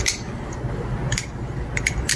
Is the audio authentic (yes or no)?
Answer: yes